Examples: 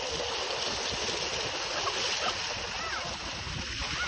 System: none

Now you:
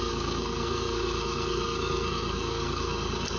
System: codec, SNAC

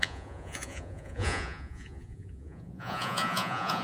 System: vocoder, Vocos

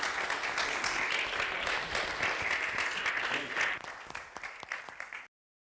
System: none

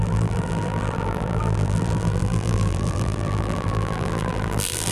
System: vocoder, BigVGAN v2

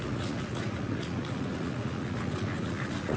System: vocoder, Vocos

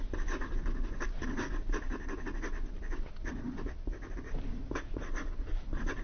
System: none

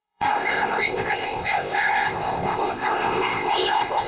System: codec, ZipCodec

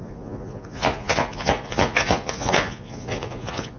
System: vocoder, Vocos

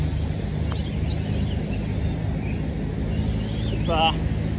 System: none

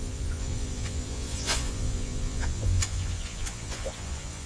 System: vocoder, Vocos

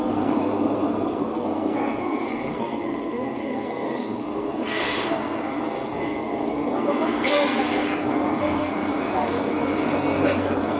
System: codec, SNAC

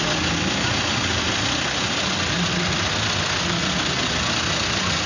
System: none